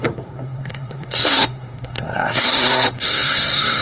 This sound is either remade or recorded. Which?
remade